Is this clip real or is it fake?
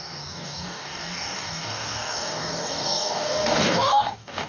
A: fake